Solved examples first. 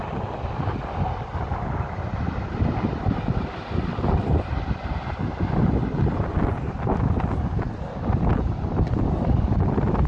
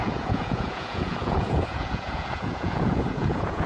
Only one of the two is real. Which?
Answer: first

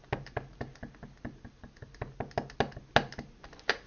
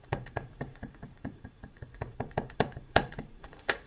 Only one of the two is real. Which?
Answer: first